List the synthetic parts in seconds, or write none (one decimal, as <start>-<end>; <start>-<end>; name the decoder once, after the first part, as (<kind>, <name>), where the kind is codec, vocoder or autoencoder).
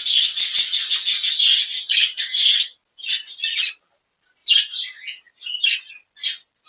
4.4-5.9 (vocoder, BigVGAN v2)